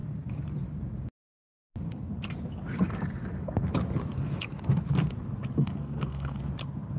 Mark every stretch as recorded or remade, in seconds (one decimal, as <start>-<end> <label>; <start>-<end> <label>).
0.0-5.6 recorded; 5.6-6.4 remade; 6.4-7.0 recorded